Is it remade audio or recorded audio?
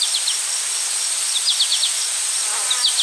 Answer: recorded